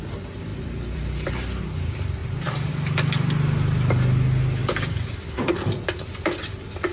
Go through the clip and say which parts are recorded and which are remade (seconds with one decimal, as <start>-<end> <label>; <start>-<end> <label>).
0.0-0.5 recorded; 0.5-1.6 remade; 1.6-4.6 recorded; 4.6-6.1 remade; 6.1-6.9 recorded